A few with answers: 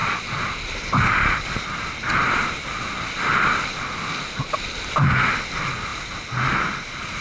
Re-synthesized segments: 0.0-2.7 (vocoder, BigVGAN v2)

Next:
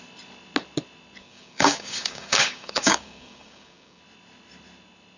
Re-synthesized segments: 1.2-4.0 (codec, DAC)

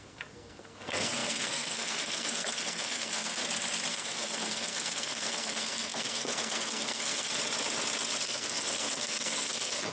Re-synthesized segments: 0.0-3.4 (codec, SNAC); 3.9-7.4; 8.2-9.9

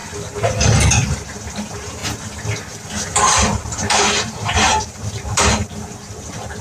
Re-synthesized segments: 1.1-2.0 (vocoder, BigVGAN v2); 3.1-6.6